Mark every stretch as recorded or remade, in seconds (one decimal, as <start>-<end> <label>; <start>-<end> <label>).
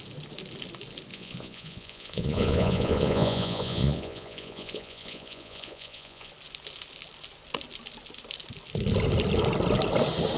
0.0-1.1 recorded; 1.1-6.3 remade; 6.3-10.4 recorded